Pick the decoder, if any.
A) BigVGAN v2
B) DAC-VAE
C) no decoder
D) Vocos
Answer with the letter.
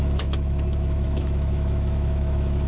B